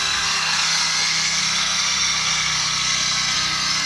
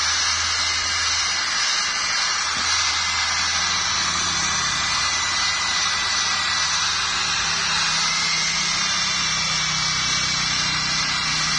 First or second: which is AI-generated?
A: first